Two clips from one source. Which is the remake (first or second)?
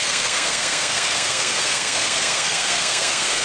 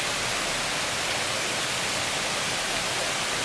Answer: first